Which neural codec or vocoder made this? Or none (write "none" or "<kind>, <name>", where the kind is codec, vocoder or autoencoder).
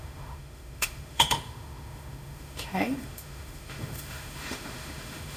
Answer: autoencoder, DAC-VAE